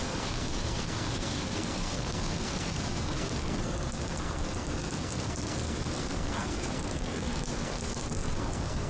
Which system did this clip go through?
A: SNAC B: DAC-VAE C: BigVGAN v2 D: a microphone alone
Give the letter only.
A